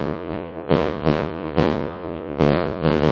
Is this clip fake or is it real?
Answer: fake